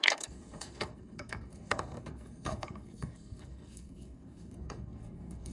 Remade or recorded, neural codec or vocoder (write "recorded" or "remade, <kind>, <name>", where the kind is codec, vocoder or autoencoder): remade, codec, SNAC